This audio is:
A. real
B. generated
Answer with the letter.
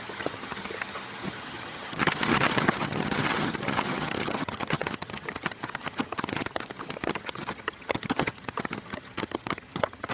B